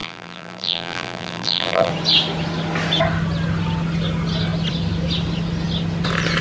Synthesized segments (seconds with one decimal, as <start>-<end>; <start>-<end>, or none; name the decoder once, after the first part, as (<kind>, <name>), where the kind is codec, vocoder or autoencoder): 0.0-1.9 (vocoder, BigVGAN v2)